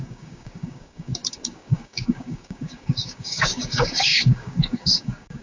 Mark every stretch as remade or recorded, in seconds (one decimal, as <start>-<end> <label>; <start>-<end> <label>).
0.0-5.4 remade